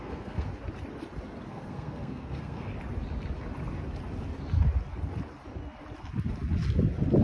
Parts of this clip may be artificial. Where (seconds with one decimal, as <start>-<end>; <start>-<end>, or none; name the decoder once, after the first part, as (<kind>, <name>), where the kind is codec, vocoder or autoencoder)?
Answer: 0.0-0.5 (codec, SNAC); 1.5-2.7